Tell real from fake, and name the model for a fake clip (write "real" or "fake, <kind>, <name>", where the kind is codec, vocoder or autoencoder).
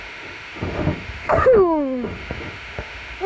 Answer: fake, autoencoder, DAC-VAE